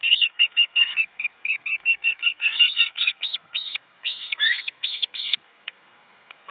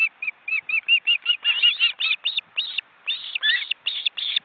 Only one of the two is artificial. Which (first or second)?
first